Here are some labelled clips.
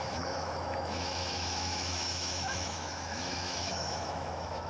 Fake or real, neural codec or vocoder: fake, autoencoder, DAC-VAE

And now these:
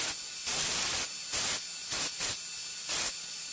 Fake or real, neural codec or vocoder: real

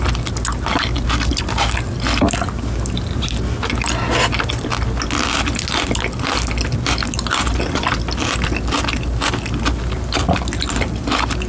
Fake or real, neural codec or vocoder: real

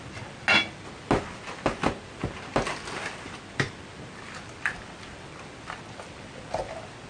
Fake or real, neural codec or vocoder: real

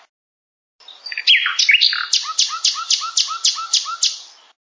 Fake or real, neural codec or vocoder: real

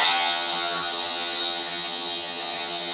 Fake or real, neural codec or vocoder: fake, vocoder, HiFi-GAN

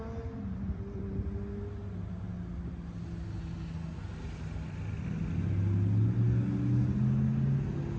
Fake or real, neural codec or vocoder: real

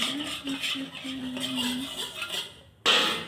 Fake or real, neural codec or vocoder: real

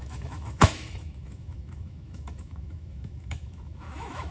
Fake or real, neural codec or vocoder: fake, autoencoder, DAC-VAE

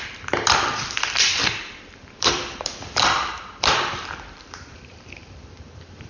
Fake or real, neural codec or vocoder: fake, vocoder, BigVGAN v2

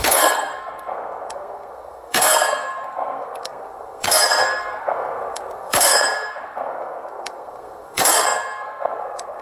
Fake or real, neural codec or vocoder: fake, codec, SNAC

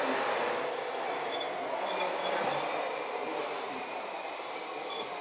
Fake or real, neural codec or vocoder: real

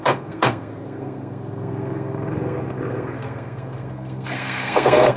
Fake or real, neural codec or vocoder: fake, codec, SNAC